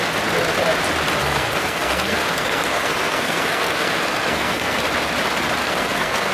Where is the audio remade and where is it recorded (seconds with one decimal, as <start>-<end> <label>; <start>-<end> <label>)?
0.0-1.2 recorded; 1.2-4.8 remade; 4.8-5.6 recorded; 5.6-6.3 remade